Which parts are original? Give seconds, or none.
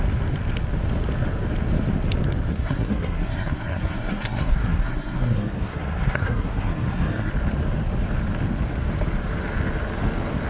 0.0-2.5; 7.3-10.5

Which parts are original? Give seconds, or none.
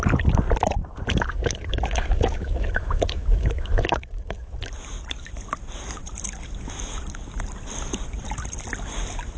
0.0-0.8; 4.6-9.4